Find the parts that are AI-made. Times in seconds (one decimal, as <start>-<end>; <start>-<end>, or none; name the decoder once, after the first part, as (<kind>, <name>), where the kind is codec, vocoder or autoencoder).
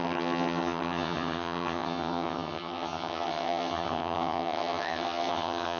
0.0-5.8 (vocoder, HiFi-GAN)